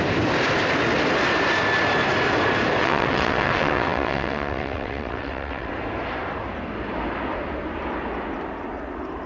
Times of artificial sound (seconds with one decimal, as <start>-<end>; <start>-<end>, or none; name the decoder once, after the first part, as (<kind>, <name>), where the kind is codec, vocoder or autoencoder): 2.8-5.7 (vocoder, WaveNeXt)